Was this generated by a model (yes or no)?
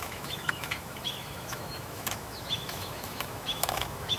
yes